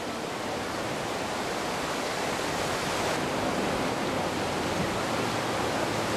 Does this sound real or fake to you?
real